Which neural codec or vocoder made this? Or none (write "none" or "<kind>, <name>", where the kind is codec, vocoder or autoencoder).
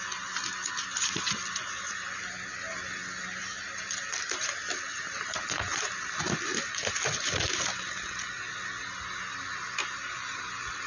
none